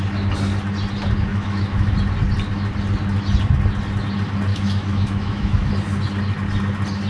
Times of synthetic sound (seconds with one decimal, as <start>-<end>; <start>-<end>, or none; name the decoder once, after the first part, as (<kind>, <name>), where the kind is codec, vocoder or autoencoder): 1.3-1.9 (autoencoder, DAC-VAE); 4.5-5.7